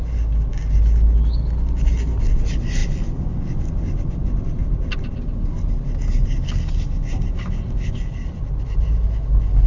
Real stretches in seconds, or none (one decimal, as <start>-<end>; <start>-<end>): 0.0-9.7